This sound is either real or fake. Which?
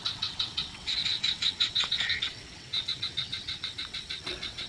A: fake